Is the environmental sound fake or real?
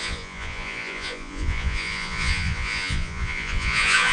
fake